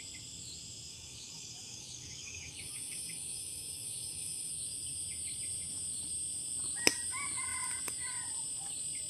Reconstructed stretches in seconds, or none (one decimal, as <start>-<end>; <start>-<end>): 0.9-4.5